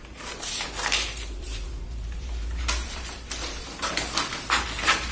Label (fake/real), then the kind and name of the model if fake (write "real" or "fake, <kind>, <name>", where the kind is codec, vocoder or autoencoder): fake, vocoder, BigVGAN v2